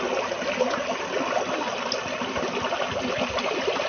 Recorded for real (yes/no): yes